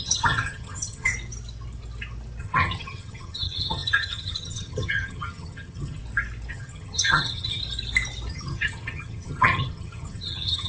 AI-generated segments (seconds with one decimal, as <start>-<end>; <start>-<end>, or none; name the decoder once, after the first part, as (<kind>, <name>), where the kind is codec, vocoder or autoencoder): 0.0-1.1 (vocoder, HiFi-GAN); 2.4-6.0; 6.5-7.6; 8.3-10.7